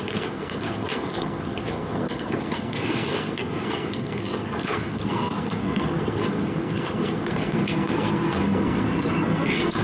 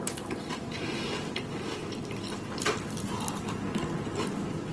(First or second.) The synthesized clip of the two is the first